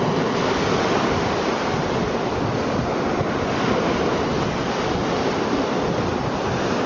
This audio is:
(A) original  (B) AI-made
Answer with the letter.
A